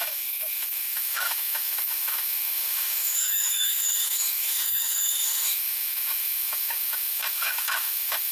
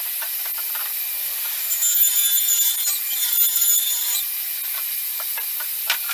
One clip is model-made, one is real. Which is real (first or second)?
second